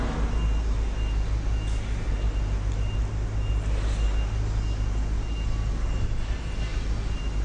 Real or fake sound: real